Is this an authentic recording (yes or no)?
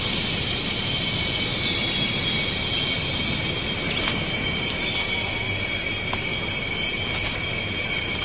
yes